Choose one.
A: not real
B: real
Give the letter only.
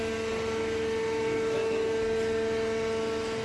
B